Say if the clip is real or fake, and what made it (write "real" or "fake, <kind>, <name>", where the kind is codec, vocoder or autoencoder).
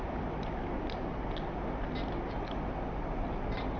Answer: real